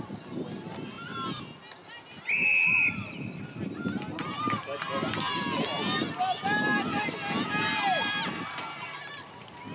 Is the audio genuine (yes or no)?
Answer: yes